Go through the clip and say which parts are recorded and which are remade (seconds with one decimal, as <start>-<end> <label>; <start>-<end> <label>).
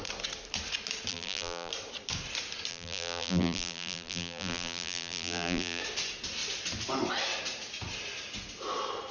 0.0-1.1 recorded; 1.1-1.7 remade; 1.7-2.7 recorded; 2.7-5.8 remade; 5.8-9.1 recorded